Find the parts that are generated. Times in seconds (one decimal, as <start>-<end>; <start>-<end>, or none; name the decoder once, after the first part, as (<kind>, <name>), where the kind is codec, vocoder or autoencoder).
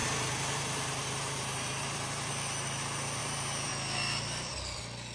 0.0-2.3 (vocoder, BigVGAN v2); 3.2-3.7